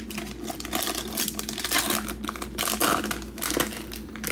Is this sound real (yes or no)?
yes